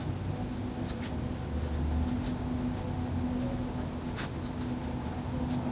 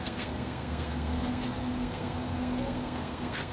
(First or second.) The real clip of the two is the first